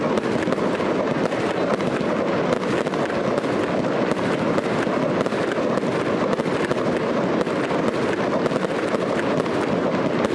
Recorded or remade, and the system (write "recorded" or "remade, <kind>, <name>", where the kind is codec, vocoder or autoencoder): recorded